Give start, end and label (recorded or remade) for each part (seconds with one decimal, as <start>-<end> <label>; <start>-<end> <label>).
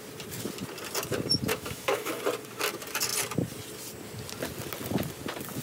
0.0-1.5 recorded; 1.5-2.1 remade; 2.1-5.6 recorded